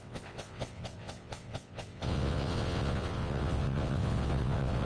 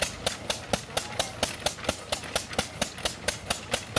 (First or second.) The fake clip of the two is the first